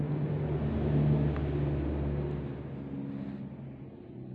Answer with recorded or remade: recorded